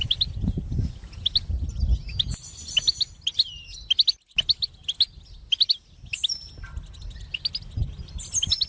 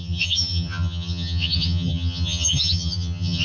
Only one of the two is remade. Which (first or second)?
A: second